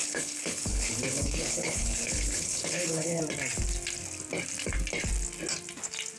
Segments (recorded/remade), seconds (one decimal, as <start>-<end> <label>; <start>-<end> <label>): 0.0-3.2 remade; 3.2-6.2 recorded